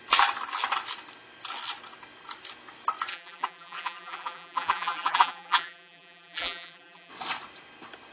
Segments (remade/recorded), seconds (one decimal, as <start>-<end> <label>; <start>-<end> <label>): 0.0-3.1 recorded; 3.1-7.1 remade; 7.1-8.1 recorded